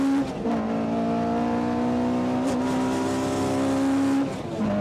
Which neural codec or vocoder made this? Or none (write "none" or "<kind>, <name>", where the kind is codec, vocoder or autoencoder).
none